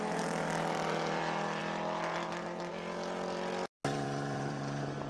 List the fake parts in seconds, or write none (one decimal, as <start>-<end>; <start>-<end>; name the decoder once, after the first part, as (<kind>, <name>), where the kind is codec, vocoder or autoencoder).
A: 0.0-1.6 (vocoder, BigVGAN v2); 2.7-5.1